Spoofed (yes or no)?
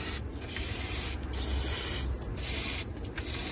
no